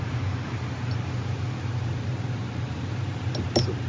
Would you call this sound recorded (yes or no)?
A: yes